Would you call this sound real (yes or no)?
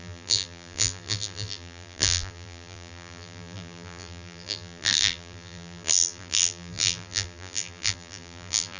no